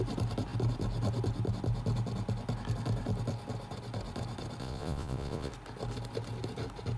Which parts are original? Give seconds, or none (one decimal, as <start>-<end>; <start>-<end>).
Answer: 0.0-4.6; 5.5-7.0